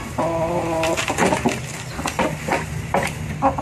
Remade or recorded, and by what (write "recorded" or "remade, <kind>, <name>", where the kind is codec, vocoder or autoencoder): remade, vocoder, BigVGAN v2